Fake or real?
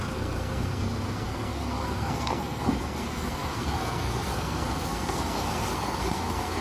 fake